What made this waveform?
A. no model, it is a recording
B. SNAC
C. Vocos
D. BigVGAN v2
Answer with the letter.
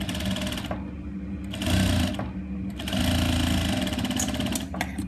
A